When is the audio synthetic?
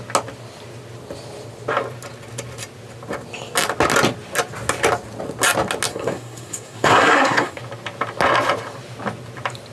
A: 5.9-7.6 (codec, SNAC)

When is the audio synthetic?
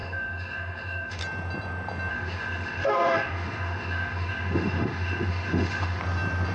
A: 0.0-1.2 (autoencoder, DAC-VAE); 2.1-6.0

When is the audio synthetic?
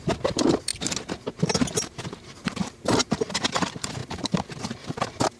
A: 0.0-0.7 (vocoder, BigVGAN v2); 1.6-5.4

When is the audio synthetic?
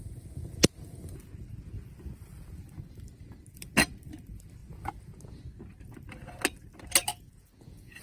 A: 7.1-8.0 (vocoder, Vocos)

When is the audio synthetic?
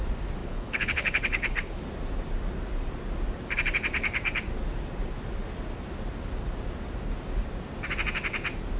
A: 0.4-1.8 (codec, HILCodec)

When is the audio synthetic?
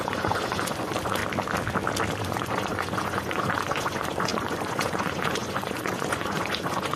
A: 0.0-1.2 (vocoder, Vocos); 2.2-7.0